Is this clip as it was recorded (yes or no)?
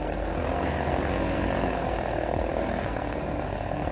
no